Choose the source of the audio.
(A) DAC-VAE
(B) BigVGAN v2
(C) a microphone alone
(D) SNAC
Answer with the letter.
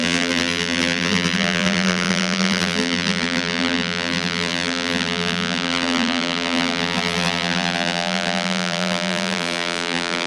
B